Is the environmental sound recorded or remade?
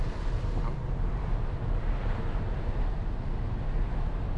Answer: recorded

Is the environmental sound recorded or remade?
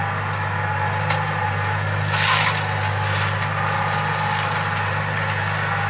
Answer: recorded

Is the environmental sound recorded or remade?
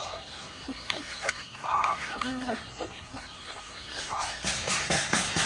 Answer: remade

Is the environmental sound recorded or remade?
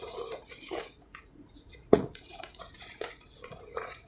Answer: remade